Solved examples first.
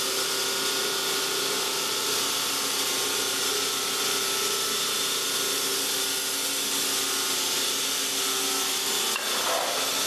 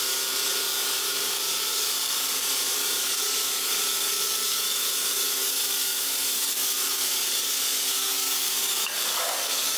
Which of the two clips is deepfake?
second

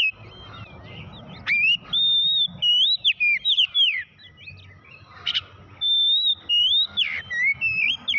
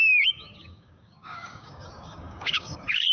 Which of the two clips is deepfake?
second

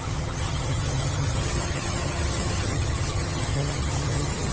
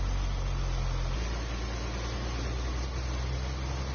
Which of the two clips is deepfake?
first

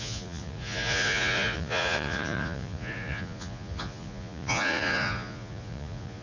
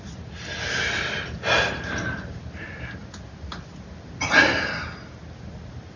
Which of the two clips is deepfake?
first